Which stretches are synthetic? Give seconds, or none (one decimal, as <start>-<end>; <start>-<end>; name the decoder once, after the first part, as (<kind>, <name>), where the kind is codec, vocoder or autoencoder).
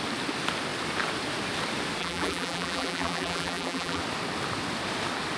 2.0-4.0 (vocoder, BigVGAN v2)